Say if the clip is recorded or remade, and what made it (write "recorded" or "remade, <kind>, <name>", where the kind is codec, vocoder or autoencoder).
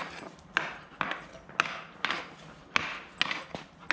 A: recorded